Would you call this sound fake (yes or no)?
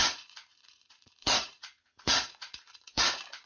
yes